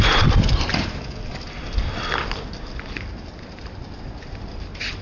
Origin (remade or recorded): recorded